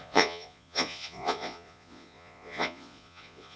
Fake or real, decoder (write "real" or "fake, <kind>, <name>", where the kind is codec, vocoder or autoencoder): fake, vocoder, Vocos